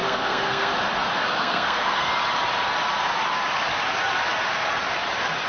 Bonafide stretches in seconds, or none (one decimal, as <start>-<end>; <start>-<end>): 0.7-1.2; 2.1-5.5